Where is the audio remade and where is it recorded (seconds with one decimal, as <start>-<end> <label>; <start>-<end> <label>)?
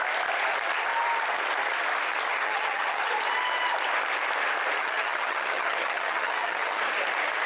0.0-2.3 recorded; 2.3-3.1 remade; 3.1-4.8 recorded; 4.8-6.8 remade; 6.8-7.5 recorded